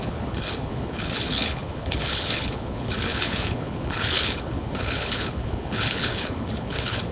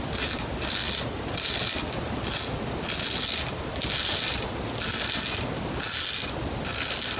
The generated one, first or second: first